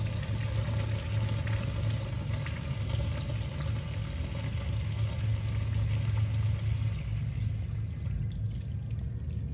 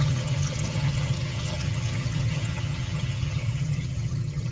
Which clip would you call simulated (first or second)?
second